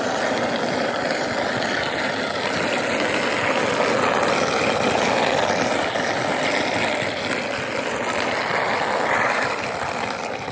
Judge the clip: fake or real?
real